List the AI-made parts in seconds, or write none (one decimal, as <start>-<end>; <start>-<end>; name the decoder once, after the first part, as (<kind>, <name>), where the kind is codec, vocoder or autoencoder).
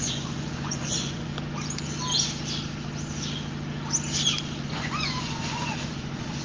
0.0-1.3 (vocoder, Vocos); 4.6-6.4